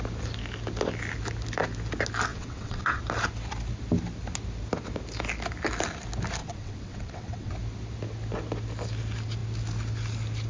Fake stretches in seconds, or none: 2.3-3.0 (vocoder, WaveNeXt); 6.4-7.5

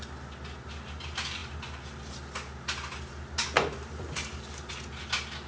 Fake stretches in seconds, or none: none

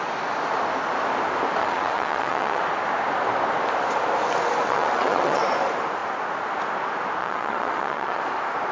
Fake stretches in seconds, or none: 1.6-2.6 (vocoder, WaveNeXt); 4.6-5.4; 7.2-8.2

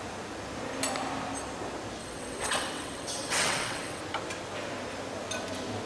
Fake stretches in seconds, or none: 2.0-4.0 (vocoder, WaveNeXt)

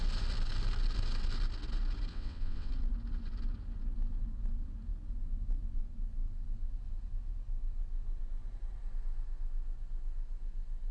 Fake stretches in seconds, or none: 2.1-2.7 (vocoder, WaveNeXt)